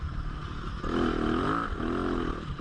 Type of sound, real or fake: real